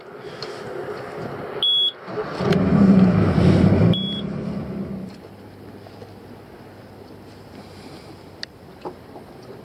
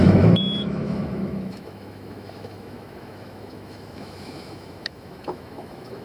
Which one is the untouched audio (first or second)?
first